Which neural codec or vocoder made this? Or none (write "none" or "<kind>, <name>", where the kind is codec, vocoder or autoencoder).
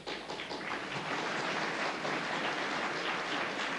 none